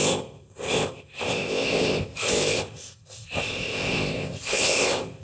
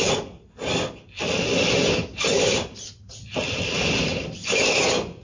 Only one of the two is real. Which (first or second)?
second